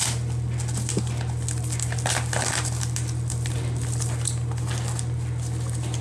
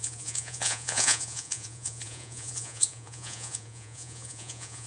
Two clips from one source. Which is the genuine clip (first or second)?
first